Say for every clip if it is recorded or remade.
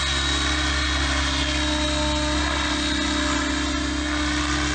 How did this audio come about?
recorded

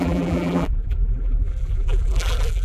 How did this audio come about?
remade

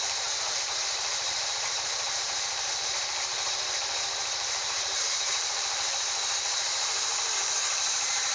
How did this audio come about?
remade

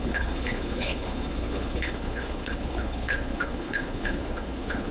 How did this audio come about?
remade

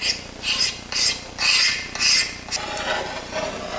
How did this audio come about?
recorded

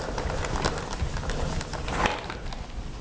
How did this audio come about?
recorded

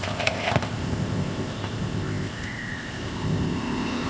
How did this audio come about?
remade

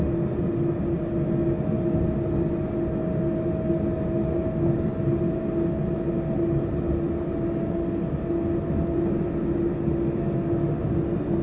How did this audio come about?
recorded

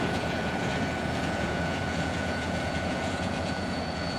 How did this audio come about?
remade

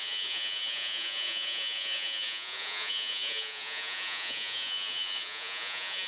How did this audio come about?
remade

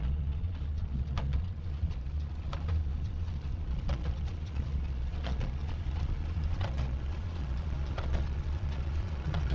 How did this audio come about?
remade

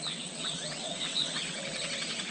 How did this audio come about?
remade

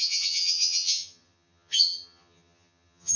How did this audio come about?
remade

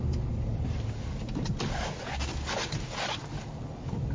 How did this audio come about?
recorded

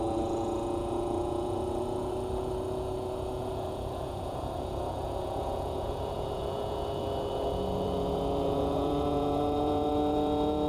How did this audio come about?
remade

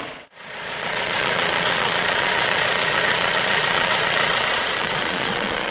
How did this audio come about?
remade